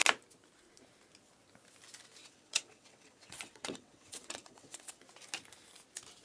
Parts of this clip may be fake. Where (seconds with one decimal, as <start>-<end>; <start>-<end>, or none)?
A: 2.2-5.0